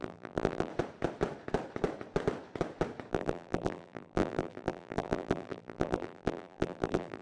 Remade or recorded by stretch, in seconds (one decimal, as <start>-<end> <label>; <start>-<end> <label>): 0.0-0.7 remade; 0.7-3.1 recorded; 3.1-7.2 remade